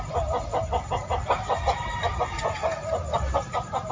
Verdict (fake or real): real